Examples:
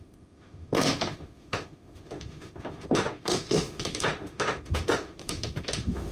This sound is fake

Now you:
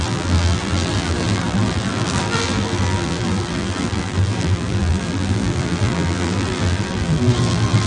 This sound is fake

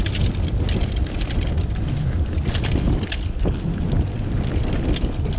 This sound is real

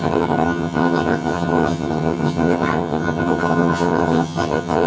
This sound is fake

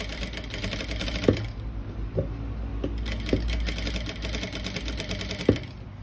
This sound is real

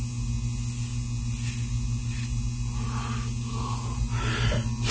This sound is real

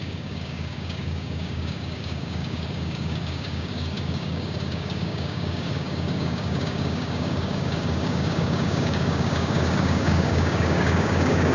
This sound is fake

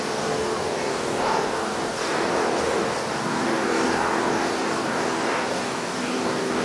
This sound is fake